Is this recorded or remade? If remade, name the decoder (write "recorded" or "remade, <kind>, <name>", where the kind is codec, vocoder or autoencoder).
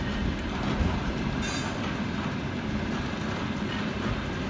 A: recorded